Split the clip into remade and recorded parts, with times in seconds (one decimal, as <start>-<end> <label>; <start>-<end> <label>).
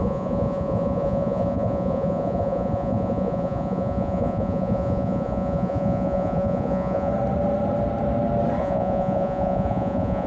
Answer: 0.0-7.1 remade; 7.1-8.6 recorded; 8.6-10.3 remade